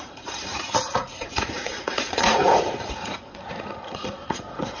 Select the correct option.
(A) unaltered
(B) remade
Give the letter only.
B